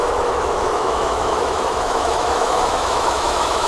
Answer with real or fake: fake